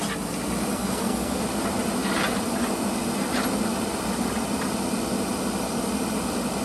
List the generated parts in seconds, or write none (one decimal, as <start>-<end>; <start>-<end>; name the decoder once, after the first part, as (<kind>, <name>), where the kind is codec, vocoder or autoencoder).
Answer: 0.7-1.4 (codec, SNAC)